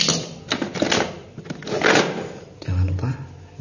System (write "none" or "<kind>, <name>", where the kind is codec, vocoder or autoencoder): none